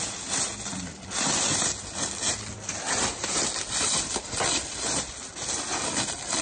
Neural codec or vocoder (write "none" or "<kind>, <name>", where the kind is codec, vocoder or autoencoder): none